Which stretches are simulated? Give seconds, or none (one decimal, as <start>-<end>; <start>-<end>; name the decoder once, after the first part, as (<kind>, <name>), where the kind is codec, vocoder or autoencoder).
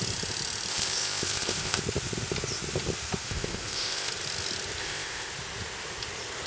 0.7-1.8 (codec, ZipCodec); 3.2-4.1; 4.8-5.3